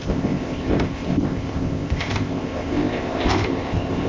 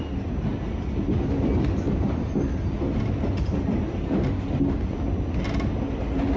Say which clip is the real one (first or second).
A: second